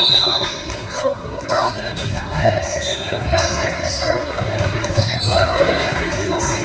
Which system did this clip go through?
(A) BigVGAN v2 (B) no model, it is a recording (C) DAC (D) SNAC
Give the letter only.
D